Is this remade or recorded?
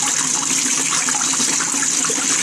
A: recorded